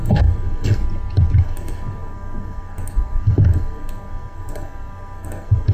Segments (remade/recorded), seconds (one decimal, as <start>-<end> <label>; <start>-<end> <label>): 0.0-0.8 remade; 0.8-1.4 recorded; 1.4-5.7 remade